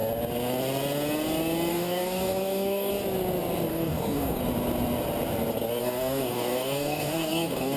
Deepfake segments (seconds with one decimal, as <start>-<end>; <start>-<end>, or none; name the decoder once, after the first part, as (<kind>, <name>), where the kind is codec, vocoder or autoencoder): 1.7-2.9 (codec, DAC); 3.7-4.4; 5.8-7.8